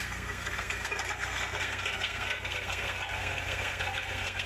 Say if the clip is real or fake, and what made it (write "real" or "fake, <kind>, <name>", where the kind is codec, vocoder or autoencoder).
fake, codec, SNAC